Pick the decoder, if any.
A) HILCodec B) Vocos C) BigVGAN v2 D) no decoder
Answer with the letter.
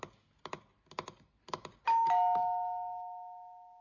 D